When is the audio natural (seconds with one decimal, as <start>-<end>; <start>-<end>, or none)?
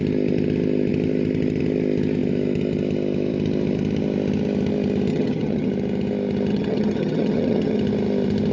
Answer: 0.0-5.1; 5.7-6.5; 7.8-8.5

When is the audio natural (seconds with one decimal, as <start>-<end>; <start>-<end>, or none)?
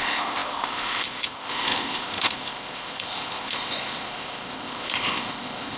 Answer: none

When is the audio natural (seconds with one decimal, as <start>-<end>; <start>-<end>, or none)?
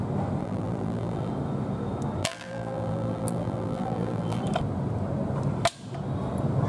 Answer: 0.0-0.4; 1.3-2.2; 4.4-6.7